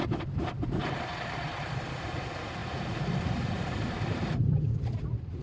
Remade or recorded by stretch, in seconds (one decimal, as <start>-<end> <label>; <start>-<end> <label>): 0.0-1.1 recorded; 1.1-2.2 remade; 2.2-2.6 recorded; 2.6-5.4 remade